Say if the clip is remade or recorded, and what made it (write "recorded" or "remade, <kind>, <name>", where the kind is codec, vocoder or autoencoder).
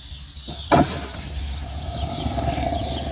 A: recorded